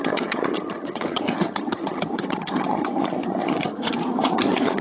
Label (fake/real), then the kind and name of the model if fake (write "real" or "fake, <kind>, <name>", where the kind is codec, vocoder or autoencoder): fake, vocoder, HiFi-GAN